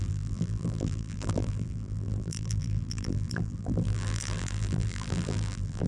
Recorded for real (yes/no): no